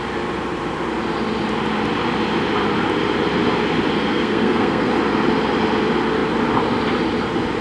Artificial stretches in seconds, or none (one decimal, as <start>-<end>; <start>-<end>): 4.1-4.9